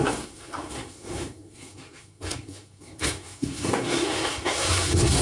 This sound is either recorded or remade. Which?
remade